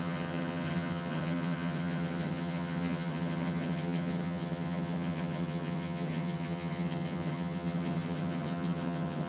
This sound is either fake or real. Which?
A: fake